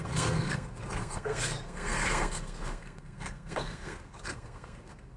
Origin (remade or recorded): remade